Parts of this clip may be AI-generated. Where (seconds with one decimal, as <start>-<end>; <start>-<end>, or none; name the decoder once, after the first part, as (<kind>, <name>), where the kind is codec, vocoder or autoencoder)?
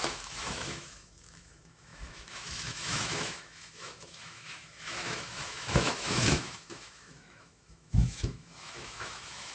0.0-9.5 (autoencoder, DAC-VAE)